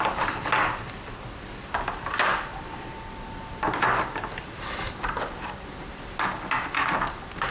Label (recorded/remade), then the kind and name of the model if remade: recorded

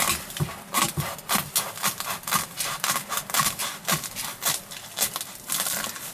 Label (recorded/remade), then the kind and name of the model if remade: recorded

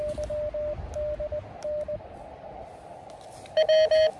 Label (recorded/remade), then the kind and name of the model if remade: recorded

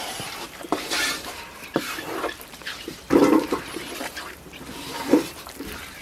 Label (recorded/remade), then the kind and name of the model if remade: remade, vocoder, BigVGAN v2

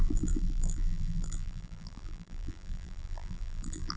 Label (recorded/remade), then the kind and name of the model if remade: remade, vocoder, BigVGAN v2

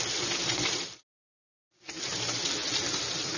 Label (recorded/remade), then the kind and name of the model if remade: remade, vocoder, BigVGAN v2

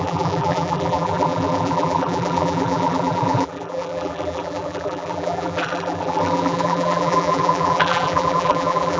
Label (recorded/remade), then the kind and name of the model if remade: remade, vocoder, BigVGAN v2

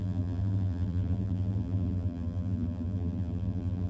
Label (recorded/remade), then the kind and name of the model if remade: remade, vocoder, BigVGAN v2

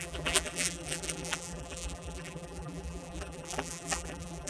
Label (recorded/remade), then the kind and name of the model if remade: remade, vocoder, BigVGAN v2